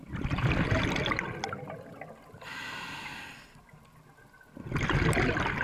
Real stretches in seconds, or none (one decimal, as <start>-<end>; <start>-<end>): 0.0-5.6